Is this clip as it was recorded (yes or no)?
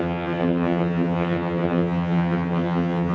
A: no